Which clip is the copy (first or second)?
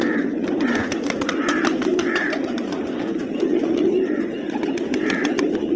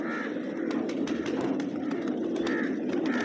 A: first